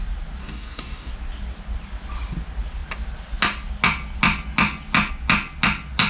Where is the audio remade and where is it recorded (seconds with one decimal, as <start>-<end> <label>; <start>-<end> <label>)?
0.0-0.4 recorded; 0.4-1.1 remade; 1.1-6.1 recorded